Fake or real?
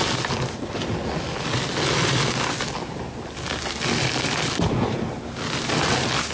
real